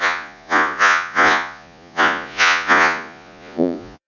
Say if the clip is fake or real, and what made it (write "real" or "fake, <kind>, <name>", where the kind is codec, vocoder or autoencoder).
fake, vocoder, Vocos